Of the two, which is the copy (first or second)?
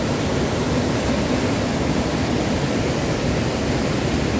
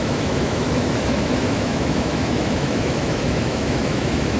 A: second